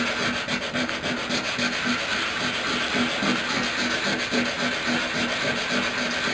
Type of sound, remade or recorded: recorded